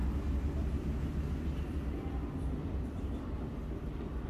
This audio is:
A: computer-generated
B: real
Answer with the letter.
B